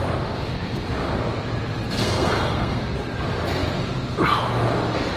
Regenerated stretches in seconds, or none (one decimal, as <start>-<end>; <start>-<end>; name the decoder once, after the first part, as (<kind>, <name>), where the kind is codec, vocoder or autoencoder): 2.0-2.8 (codec, SNAC)